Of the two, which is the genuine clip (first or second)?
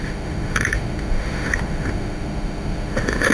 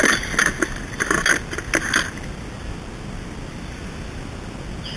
second